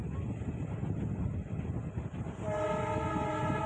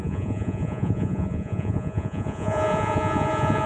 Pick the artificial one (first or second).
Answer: second